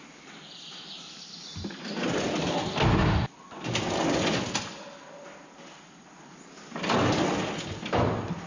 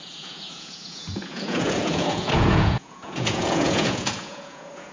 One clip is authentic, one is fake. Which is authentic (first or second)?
first